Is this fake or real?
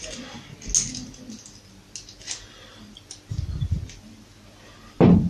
real